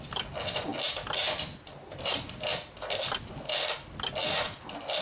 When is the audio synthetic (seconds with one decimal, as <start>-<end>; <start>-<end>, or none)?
none